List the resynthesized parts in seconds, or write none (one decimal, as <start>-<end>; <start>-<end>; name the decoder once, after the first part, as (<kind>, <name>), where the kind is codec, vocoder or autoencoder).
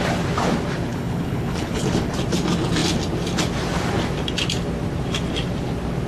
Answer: 0.9-2.1 (codec, HILCodec)